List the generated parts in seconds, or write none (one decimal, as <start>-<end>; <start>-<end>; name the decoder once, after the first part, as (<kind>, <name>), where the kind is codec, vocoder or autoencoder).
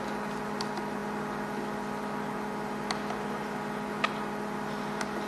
none